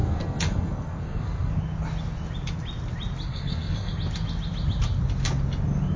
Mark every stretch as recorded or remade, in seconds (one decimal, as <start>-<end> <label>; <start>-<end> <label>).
0.0-1.5 remade; 1.5-3.3 recorded; 3.3-3.9 remade; 3.9-6.0 recorded